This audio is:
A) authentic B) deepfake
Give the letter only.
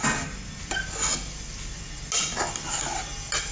A